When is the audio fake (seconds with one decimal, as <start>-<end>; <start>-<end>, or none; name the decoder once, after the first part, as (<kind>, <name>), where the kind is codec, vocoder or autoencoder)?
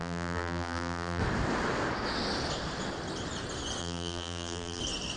0.0-1.2 (vocoder, BigVGAN v2); 3.8-4.8